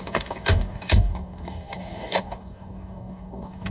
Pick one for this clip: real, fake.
fake